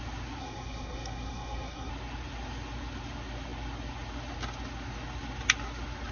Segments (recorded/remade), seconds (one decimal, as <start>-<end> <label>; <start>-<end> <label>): 0.0-0.4 recorded; 0.4-1.9 remade; 1.9-6.1 recorded